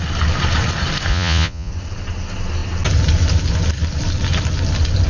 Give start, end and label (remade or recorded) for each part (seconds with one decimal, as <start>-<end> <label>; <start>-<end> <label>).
0.0-1.1 recorded; 1.1-1.7 remade; 1.7-5.1 recorded